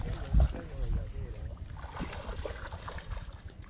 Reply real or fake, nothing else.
real